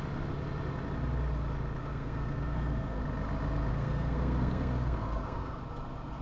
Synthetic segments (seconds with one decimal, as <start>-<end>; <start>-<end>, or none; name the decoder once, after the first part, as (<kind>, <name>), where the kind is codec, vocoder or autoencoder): 1.8-3.0 (codec, SNAC); 3.7-5.6